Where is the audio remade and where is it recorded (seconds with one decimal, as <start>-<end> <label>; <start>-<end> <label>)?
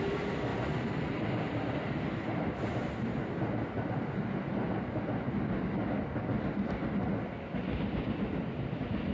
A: 0.0-9.1 recorded